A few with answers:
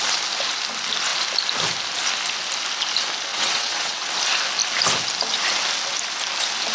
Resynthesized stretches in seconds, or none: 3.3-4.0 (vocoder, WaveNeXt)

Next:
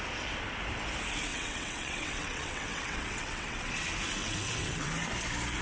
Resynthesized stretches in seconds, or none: 1.3-3.7 (vocoder, WaveNeXt); 4.2-4.9

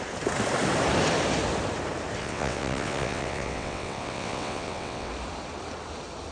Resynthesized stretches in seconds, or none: 2.2-5.1 (vocoder, WaveNeXt)

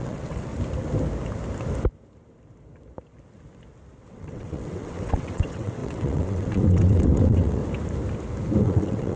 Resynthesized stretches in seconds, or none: 0.0-0.5 (vocoder, WaveNeXt); 4.0-7.6; 8.6-9.2